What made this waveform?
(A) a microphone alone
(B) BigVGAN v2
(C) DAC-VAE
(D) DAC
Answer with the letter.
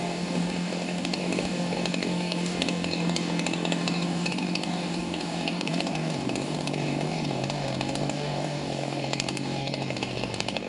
D